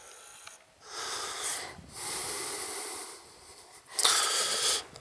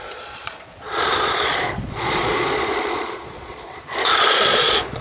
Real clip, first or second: first